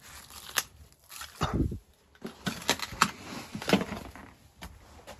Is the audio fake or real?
real